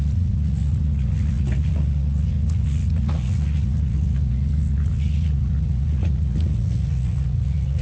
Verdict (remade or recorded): remade